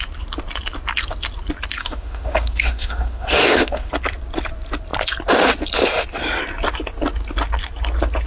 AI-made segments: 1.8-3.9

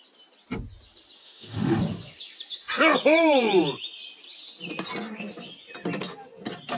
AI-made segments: 1.2-1.8